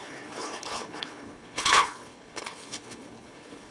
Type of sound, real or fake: fake